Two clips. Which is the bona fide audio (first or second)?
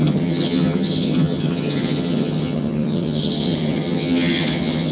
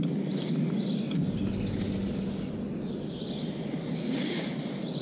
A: second